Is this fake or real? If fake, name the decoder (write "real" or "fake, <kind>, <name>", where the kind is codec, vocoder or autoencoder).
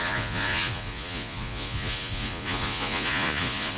fake, vocoder, Vocos